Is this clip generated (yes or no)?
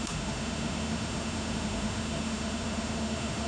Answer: yes